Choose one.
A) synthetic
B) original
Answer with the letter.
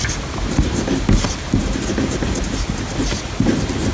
B